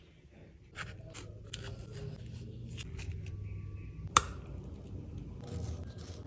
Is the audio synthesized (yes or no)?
no